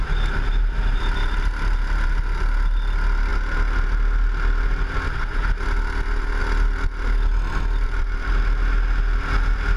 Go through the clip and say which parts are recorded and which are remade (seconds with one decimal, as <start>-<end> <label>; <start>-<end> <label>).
0.0-9.8 recorded

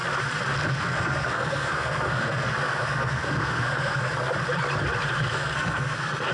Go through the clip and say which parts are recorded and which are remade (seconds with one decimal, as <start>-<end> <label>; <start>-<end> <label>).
0.0-0.7 recorded; 0.7-4.1 remade; 4.1-5.3 recorded; 5.3-6.3 remade

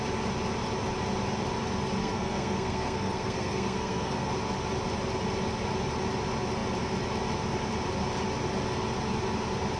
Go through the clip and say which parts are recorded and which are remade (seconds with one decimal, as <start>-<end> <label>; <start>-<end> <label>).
0.0-2.0 recorded; 2.0-4.3 remade; 4.3-9.8 recorded

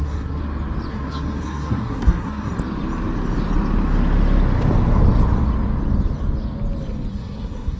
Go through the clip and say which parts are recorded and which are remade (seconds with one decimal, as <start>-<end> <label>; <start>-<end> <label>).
0.0-0.4 remade; 0.4-0.9 recorded; 0.9-2.5 remade; 2.5-7.1 recorded; 7.1-7.8 remade